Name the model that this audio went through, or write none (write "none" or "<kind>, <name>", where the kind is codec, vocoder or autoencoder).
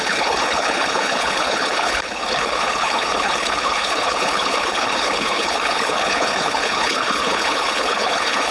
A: codec, HILCodec